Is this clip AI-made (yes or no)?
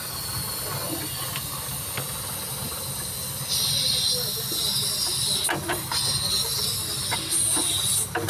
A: no